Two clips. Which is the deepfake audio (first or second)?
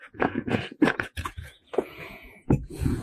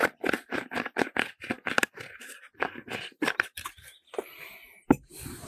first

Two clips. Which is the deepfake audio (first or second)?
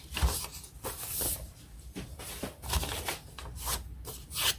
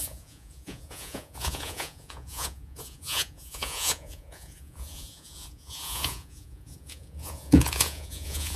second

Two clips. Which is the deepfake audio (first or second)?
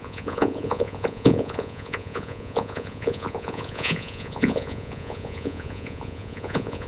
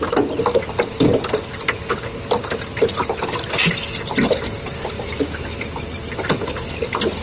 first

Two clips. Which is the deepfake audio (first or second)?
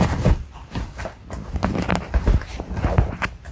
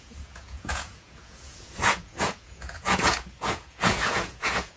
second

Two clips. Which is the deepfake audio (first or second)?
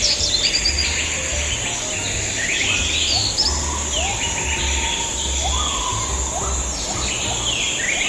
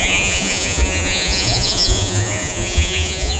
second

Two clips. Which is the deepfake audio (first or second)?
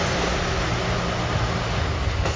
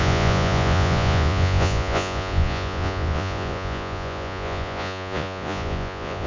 second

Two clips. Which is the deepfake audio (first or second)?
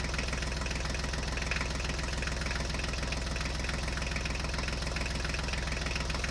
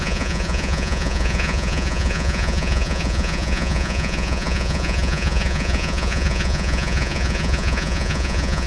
second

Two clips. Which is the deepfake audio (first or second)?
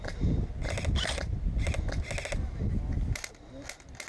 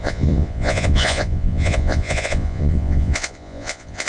second